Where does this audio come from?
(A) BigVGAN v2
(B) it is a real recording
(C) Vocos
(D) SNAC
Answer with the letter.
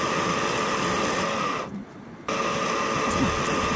B